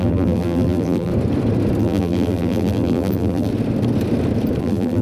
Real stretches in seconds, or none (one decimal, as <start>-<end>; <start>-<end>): 1.1-1.8; 3.5-4.6